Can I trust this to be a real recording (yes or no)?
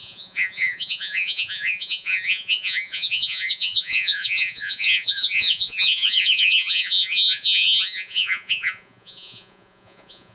no